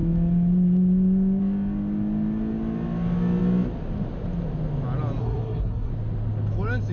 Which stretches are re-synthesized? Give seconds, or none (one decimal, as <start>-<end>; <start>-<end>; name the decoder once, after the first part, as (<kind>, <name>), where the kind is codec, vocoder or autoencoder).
5.2-5.9 (codec, SNAC)

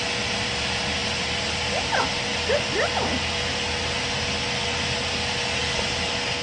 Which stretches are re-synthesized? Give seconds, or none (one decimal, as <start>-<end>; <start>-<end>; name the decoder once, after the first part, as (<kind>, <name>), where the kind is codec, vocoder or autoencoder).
none

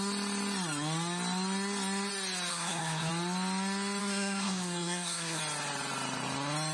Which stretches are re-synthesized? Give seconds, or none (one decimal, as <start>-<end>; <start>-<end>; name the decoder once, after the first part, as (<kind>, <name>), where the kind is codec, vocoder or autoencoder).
2.5-3.1 (codec, SNAC); 4.0-5.4

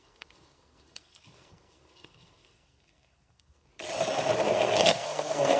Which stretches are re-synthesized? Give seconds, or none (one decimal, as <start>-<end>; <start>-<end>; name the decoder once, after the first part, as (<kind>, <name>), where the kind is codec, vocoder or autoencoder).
0.0-3.7 (codec, SNAC); 4.5-5.6